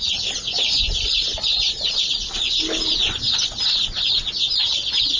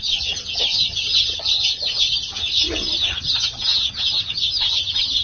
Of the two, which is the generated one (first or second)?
second